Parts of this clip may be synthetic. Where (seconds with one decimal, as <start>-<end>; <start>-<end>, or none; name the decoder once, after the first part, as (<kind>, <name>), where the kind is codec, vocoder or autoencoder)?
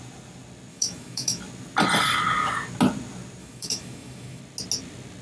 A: 0.7-1.4 (autoencoder, DAC-VAE); 3.4-4.4